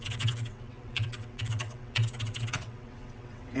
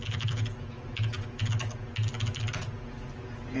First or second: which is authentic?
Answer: second